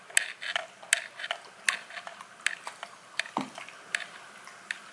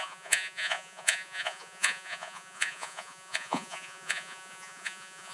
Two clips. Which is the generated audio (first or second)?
second